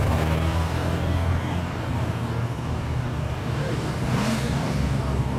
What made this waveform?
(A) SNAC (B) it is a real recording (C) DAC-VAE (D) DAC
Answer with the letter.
D